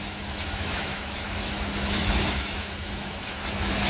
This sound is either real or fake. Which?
fake